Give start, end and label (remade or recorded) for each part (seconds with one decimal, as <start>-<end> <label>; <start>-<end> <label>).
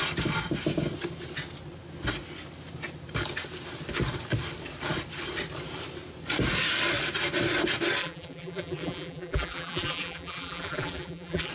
0.0-8.0 recorded; 8.0-11.5 remade